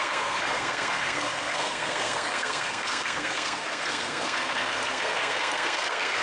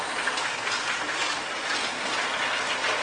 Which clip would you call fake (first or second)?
first